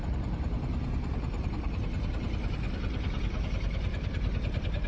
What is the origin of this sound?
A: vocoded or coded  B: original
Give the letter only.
B